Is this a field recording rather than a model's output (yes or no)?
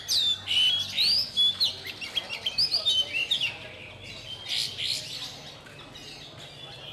yes